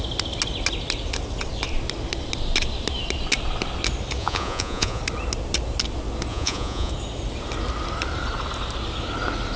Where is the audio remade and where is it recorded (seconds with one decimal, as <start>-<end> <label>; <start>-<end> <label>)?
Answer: 0.0-4.2 recorded; 4.2-5.0 remade; 5.0-6.3 recorded; 6.3-6.9 remade; 6.9-9.6 recorded